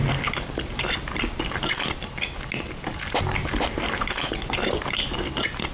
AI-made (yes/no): no